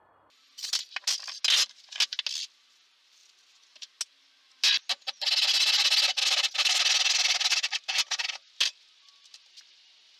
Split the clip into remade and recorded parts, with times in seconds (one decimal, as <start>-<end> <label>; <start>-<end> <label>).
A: 0.0-10.2 recorded